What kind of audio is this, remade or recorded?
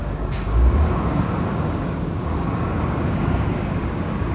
remade